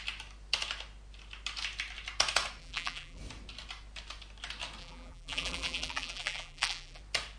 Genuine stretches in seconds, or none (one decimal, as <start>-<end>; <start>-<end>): 0.0-2.6; 3.2-4.8; 7.0-7.4